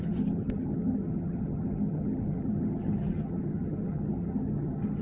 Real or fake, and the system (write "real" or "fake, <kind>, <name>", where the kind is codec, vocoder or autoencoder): fake, vocoder, HiFi-GAN